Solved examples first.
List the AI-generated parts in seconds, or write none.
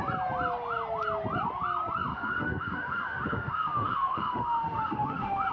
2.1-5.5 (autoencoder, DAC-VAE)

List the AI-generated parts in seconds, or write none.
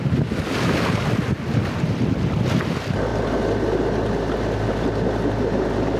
none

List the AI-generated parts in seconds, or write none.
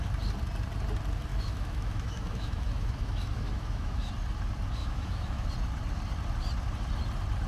1.3-4.1 (autoencoder, DAC-VAE); 4.8-5.5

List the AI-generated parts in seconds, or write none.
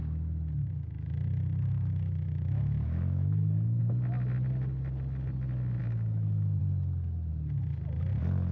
0.6-3.8 (autoencoder, DAC-VAE); 5.8-6.6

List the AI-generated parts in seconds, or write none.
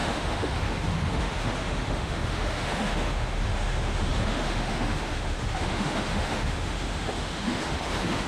0.0-8.3 (autoencoder, DAC-VAE)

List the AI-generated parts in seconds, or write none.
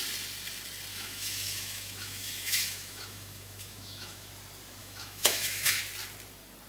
0.9-4.3 (autoencoder, DAC-VAE); 4.8-5.8